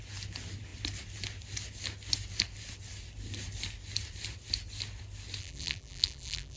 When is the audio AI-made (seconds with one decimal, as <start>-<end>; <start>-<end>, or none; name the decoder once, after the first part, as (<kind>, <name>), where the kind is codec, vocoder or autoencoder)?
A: 5.4-6.6 (vocoder, BigVGAN v2)